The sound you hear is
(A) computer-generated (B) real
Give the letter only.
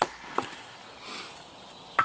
B